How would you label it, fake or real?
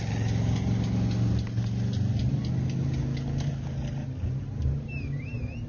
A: real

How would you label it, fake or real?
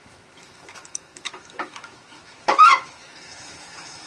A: fake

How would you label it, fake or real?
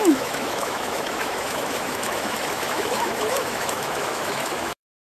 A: fake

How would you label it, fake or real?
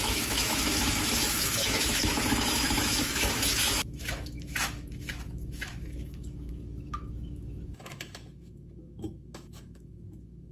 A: fake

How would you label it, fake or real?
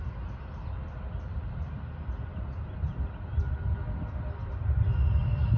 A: real